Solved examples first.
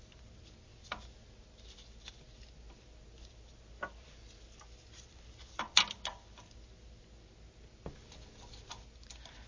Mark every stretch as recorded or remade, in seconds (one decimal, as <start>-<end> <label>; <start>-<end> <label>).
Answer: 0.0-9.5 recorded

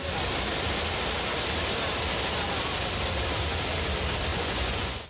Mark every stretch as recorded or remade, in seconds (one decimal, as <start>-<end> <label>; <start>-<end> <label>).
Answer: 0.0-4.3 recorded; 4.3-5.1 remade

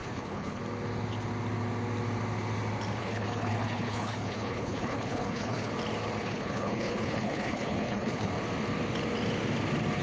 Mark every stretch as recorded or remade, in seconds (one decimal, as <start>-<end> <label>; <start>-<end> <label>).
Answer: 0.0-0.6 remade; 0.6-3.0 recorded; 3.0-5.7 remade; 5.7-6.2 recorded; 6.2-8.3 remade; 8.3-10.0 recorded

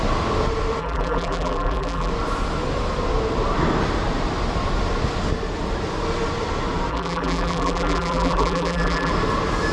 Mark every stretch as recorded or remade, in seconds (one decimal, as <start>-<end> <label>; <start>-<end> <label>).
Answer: 0.0-0.8 recorded; 0.8-2.1 remade; 2.1-6.9 recorded; 6.9-9.1 remade; 9.1-9.7 recorded